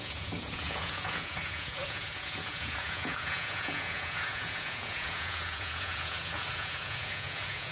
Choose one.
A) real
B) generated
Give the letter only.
B